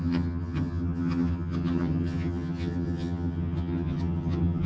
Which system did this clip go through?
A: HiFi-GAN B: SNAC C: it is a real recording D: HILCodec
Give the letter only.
A